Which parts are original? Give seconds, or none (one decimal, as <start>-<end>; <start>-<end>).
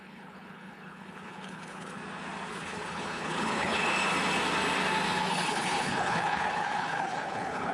2.0-2.5; 3.9-5.3